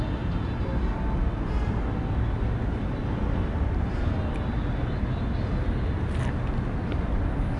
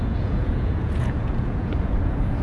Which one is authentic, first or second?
first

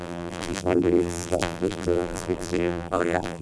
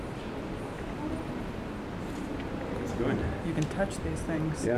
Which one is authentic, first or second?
second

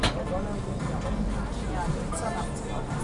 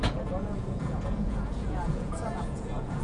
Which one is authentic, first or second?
first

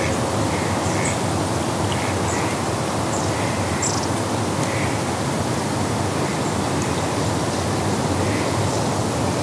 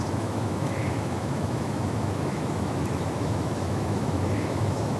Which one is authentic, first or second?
first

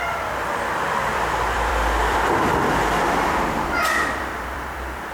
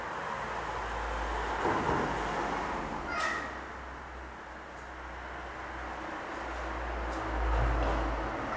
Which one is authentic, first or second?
second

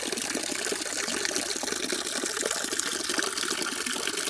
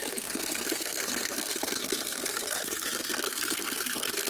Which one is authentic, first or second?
first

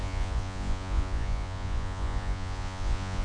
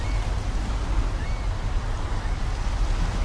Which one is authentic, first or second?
second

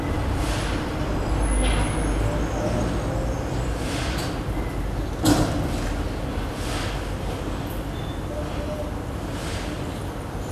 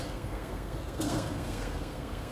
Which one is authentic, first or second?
first